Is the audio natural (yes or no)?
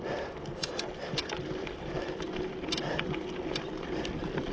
yes